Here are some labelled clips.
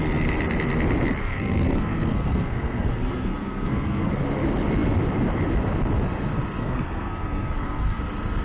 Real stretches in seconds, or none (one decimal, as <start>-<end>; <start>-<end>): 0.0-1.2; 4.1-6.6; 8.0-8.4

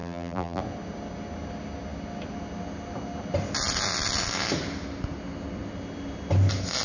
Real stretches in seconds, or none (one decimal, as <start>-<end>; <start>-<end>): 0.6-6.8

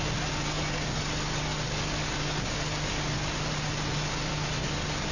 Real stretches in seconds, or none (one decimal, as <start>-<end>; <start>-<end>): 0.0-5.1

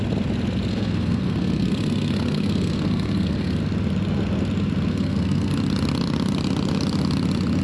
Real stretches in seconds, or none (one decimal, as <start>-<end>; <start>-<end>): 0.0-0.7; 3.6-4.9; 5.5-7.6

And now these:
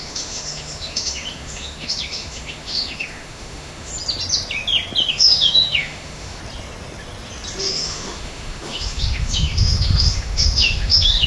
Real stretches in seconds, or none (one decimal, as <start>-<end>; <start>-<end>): 3.9-5.1; 6.4-7.6

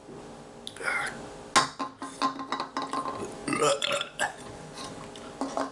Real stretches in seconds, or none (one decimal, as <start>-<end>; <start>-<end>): 0.0-3.4; 4.9-5.7

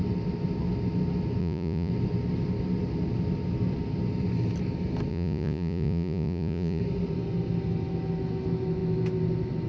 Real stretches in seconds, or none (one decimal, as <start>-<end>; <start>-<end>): 0.0-1.4; 1.9-5.1; 6.8-9.7